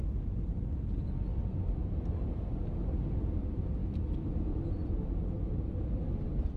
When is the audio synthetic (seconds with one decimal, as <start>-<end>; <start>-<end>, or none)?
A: 1.3-3.3